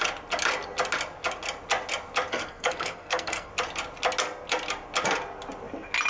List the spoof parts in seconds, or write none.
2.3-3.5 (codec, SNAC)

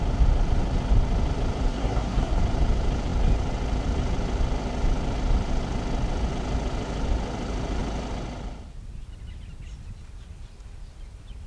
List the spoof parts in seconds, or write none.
1.7-2.4 (codec, SNAC)

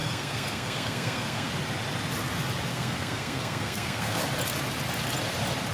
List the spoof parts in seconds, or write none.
0.0-1.5 (codec, SNAC); 2.7-4.2

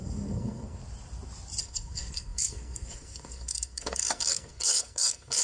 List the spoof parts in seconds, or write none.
0.0-0.8 (codec, SNAC); 1.6-5.4

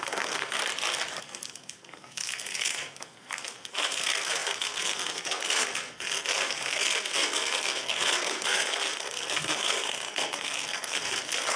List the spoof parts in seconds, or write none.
0.0-0.6 (codec, SNAC); 1.2-11.6

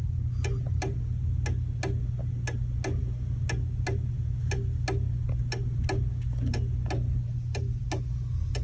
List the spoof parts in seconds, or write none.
none

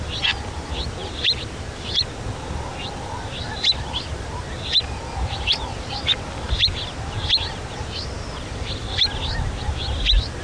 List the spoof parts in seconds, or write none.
none

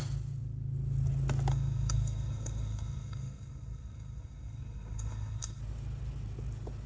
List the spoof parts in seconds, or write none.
1.5-5.6 (codec, SNAC)